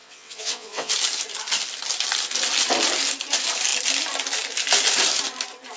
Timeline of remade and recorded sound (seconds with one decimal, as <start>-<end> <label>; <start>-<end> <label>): 0.0-0.9 remade; 0.9-5.8 recorded